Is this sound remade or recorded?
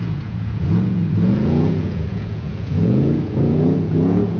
remade